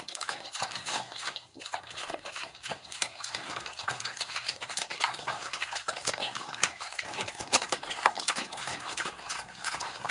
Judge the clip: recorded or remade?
remade